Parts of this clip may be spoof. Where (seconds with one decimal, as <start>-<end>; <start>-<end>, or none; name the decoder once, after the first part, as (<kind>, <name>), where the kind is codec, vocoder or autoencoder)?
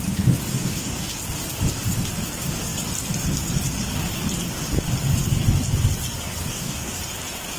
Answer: 0.5-1.1 (codec, DAC); 6.4-7.0